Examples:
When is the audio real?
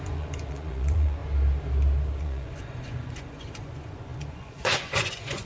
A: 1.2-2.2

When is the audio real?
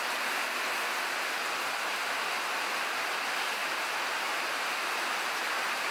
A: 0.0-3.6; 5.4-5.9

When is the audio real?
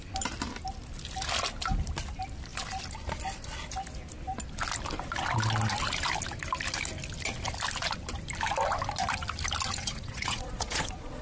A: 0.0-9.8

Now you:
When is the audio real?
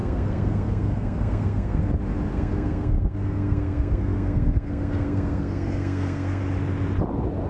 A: 1.9-2.3; 6.4-7.5